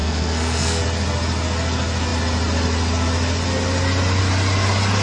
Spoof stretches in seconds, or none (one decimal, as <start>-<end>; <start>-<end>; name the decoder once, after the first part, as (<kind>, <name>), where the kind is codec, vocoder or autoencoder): 0.0-0.8 (codec, SNAC)